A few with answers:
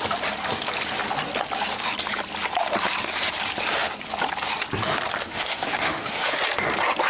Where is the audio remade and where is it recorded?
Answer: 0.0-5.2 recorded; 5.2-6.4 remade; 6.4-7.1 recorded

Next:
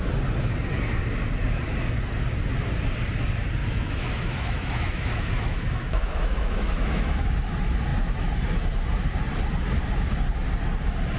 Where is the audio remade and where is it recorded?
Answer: 0.0-3.6 recorded; 3.6-7.3 remade; 7.3-11.2 recorded

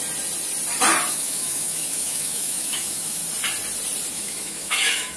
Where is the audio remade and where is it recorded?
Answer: 0.0-1.1 recorded; 1.1-3.2 remade; 3.2-4.1 recorded; 4.1-5.2 remade

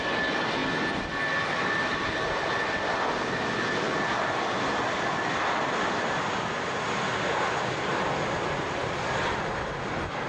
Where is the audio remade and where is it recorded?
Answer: 0.0-10.3 recorded